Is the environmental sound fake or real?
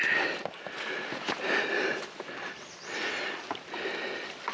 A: real